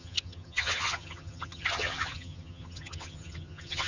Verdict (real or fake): fake